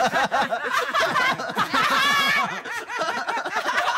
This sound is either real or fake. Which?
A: fake